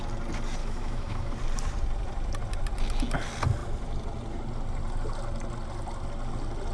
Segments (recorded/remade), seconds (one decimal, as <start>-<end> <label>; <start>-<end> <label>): 0.0-0.6 recorded; 0.6-1.3 remade; 1.3-6.7 recorded